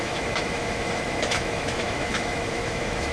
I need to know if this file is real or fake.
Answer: fake